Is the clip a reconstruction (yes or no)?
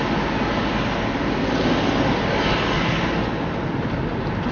no